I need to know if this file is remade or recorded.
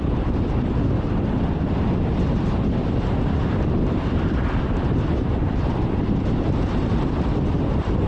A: remade